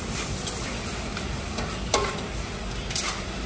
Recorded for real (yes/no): no